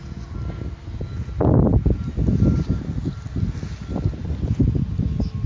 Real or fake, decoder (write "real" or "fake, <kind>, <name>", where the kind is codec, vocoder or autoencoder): real